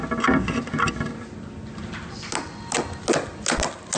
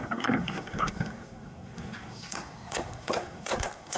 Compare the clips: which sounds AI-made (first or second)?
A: second